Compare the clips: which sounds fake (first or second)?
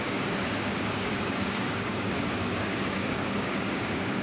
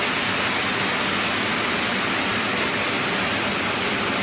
first